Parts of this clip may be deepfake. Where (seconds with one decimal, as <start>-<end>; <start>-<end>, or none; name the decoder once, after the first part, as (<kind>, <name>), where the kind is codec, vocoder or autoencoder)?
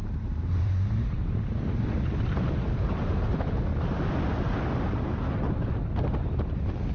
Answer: 0.0-3.7 (vocoder, BigVGAN v2); 6.2-6.9